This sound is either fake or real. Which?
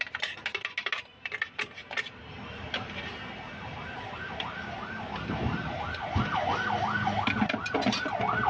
real